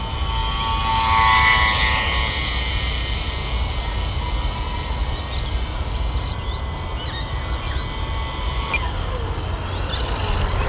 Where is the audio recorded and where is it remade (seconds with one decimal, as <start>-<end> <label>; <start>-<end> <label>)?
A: 0.0-10.7 recorded